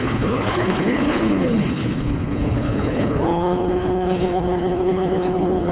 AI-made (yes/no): yes